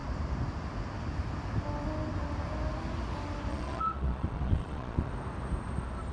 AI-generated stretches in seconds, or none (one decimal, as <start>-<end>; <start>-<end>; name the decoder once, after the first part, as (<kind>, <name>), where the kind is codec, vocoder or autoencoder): 3.5-5.1 (vocoder, Vocos)

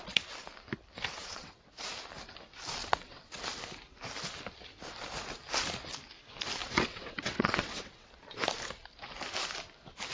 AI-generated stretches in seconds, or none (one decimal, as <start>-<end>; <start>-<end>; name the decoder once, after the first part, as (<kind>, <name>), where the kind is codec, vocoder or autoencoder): 1.2-1.8 (vocoder, WaveNeXt); 2.8-3.4; 6.6-8.1

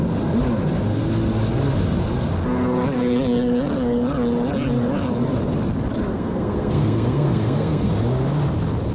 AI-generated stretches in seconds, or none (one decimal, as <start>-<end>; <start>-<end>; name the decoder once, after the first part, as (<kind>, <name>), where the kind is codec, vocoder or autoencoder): 6.1-7.9 (codec, SNAC)

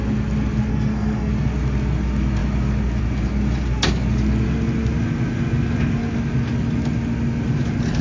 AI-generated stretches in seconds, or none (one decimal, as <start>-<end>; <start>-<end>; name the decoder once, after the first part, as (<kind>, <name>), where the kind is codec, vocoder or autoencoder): 0.7-1.3 (codec, SNAC)

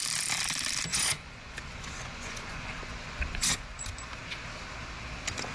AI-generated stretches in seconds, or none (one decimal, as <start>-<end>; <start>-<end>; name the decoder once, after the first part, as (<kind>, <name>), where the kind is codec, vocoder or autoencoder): 0.9-4.2 (vocoder, Vocos)

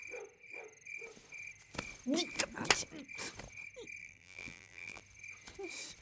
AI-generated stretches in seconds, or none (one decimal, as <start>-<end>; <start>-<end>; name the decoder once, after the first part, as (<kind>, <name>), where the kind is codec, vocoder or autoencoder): 4.0-5.0 (vocoder, BigVGAN v2)

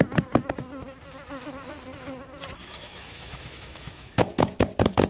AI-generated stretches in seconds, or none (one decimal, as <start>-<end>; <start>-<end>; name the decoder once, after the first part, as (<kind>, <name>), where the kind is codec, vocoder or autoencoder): 2.6-4.2 (autoencoder, DAC-VAE)

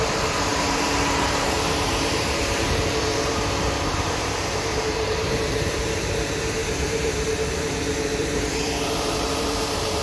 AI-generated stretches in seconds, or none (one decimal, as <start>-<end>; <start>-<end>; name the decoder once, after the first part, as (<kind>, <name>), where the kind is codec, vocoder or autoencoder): 0.0-10.0 (vocoder, BigVGAN v2)